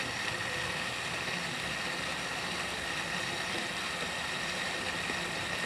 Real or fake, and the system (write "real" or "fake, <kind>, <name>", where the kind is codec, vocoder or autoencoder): fake, vocoder, BigVGAN v2